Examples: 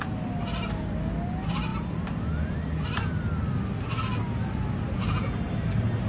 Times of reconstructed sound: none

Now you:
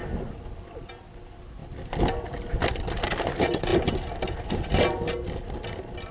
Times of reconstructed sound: none

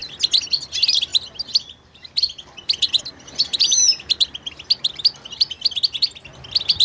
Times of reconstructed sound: none

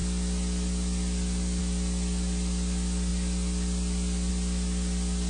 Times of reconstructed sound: none

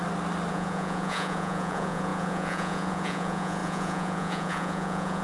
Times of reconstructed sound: 0.5-5.2 (vocoder, Vocos)

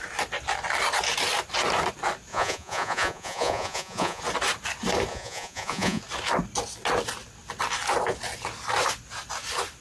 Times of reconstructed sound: 2.3-4.2 (vocoder, Vocos); 5.1-6.0